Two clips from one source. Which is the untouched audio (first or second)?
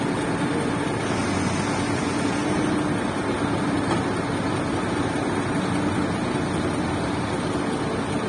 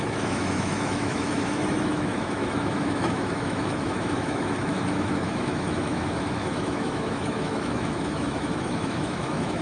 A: first